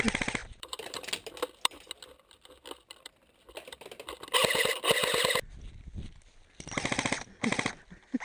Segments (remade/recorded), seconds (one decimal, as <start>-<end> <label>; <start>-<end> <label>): 0.0-0.4 recorded; 0.4-1.1 remade; 1.1-8.2 recorded